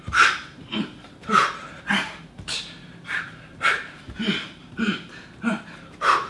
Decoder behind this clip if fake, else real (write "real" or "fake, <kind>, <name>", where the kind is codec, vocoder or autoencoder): fake, vocoder, BigVGAN v2